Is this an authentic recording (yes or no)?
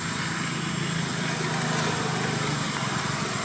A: yes